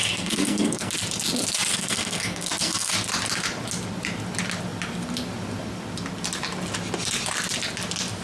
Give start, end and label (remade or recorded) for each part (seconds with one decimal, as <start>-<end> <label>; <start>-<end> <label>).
0.0-0.9 remade; 0.9-1.7 recorded; 1.7-2.9 remade; 2.9-8.2 recorded